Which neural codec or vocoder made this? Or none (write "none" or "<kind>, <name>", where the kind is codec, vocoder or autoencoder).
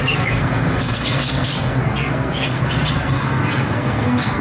codec, SNAC